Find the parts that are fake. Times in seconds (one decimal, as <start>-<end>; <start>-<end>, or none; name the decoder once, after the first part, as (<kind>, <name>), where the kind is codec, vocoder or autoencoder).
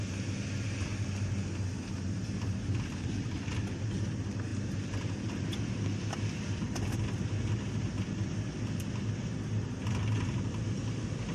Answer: none